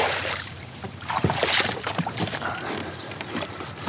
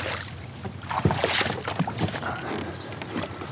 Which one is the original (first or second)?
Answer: second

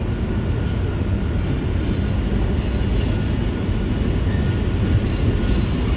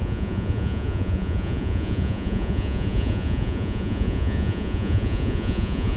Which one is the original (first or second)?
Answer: first